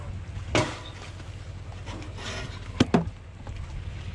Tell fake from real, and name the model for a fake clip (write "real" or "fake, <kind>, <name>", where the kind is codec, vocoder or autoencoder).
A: real